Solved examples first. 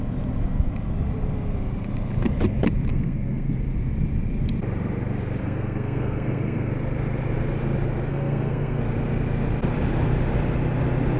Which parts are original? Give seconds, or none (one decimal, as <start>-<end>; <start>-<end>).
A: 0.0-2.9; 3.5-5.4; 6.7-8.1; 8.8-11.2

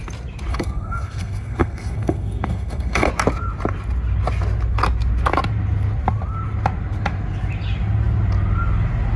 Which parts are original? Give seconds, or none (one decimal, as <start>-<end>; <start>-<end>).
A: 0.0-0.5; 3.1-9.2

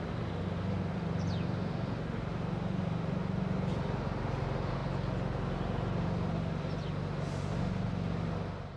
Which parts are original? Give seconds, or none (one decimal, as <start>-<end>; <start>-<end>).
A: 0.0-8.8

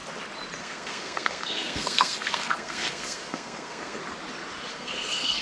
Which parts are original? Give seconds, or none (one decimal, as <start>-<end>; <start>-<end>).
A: 0.0-0.6; 4.0-4.7